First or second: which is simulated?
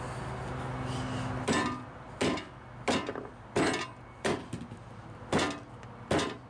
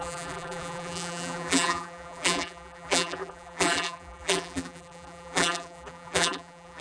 second